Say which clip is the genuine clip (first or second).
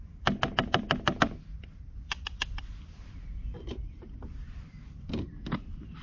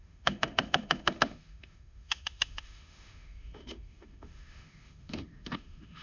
first